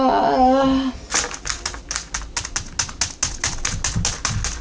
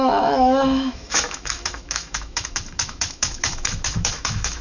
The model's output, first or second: second